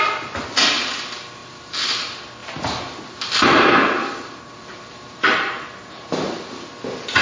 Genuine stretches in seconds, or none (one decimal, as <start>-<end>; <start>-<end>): 0.0-1.4; 2.0-2.4; 3.2-4.0; 6.7-7.2